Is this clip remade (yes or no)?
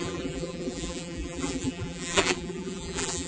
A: yes